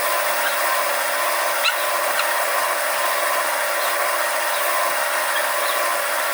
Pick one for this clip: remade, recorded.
recorded